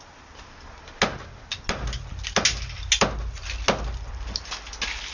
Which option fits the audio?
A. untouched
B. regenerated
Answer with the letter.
A